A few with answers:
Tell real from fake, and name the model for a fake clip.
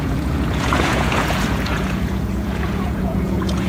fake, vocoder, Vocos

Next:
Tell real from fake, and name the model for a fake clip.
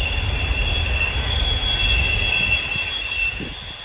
real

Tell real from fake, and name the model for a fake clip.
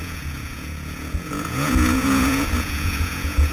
fake, vocoder, Vocos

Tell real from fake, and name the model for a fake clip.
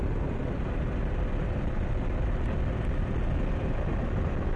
real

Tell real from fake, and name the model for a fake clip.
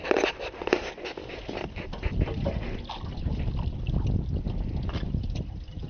real